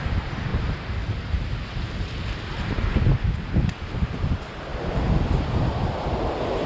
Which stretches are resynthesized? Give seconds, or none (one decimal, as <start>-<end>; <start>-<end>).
none